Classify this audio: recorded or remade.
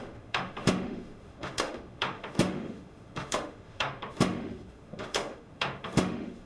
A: remade